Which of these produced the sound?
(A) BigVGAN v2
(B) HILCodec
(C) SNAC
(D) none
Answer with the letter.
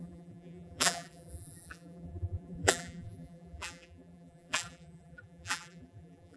A